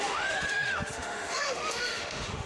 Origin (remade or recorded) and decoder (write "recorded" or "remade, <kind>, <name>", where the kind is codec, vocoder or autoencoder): remade, autoencoder, DAC-VAE